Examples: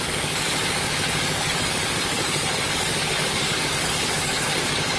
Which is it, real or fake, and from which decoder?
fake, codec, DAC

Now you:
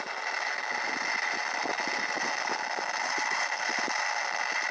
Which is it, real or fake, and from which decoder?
real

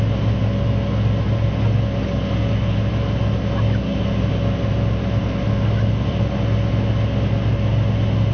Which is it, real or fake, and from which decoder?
real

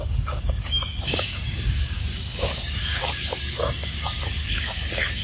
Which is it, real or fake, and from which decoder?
fake, codec, DAC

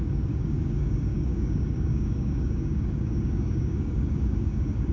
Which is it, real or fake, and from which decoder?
fake, codec, DAC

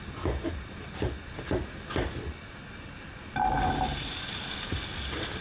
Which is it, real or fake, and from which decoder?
real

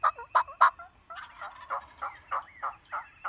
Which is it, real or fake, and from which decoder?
real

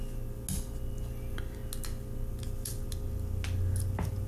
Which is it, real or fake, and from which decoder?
real